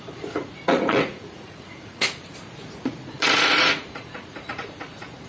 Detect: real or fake fake